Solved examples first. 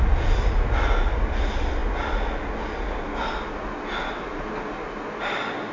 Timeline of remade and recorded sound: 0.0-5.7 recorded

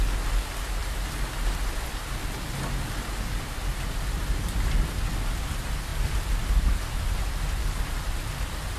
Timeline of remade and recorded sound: 0.0-8.8 recorded

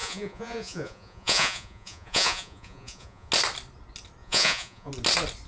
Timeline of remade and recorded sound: 0.0-3.3 remade; 3.3-4.2 recorded; 4.2-4.9 remade; 4.9-5.5 recorded

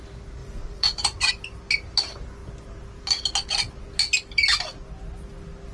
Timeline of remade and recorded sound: 0.0-0.4 recorded; 0.4-1.3 remade; 1.3-5.7 recorded

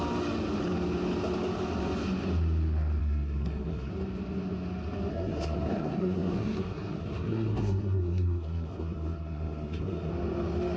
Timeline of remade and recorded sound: 0.0-3.0 recorded; 3.0-3.9 remade; 3.9-5.1 recorded; 5.1-10.1 remade; 10.1-10.8 recorded

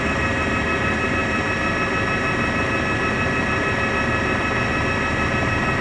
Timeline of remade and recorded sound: 0.0-5.8 recorded

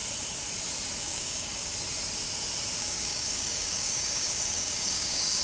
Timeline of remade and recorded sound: 0.0-1.0 recorded; 1.0-1.7 remade; 1.7-2.8 recorded; 2.8-5.4 remade